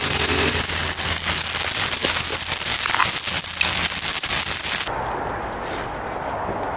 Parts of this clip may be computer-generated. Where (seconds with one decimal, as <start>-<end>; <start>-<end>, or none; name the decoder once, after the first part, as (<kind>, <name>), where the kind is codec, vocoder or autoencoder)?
0.0-0.6 (vocoder, BigVGAN v2)